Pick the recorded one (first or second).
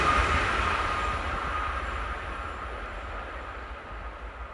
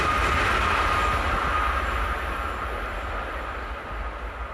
second